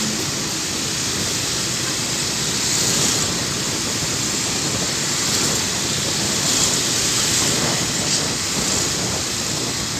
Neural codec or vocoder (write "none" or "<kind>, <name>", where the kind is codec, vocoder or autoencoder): none